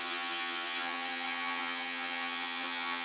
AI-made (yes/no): yes